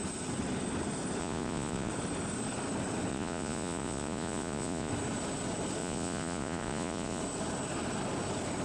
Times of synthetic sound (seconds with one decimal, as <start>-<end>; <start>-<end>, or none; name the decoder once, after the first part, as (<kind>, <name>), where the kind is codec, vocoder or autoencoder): 1.2-1.9 (vocoder, Vocos); 3.1-4.9; 5.8-7.2